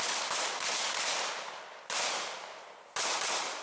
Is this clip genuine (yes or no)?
yes